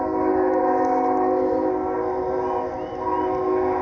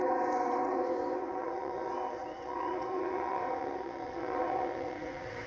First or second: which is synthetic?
second